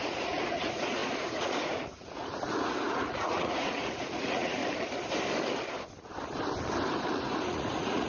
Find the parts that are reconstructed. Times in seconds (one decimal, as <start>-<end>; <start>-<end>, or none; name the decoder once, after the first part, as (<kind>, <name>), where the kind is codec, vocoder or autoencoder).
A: 0.0-4.6 (vocoder, Vocos); 7.1-8.1